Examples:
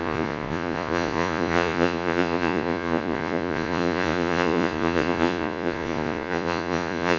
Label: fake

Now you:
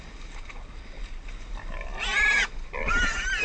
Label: real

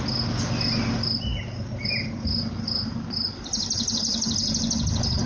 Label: real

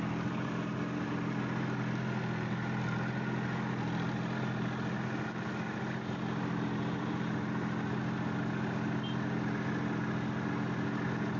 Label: real